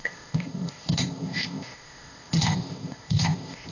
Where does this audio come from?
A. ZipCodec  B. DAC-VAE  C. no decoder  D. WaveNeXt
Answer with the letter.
A